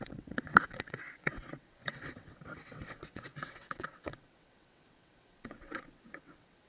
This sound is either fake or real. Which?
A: fake